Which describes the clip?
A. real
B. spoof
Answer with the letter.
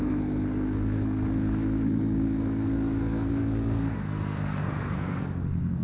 B